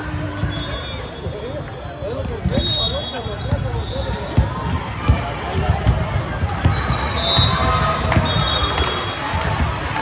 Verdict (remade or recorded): recorded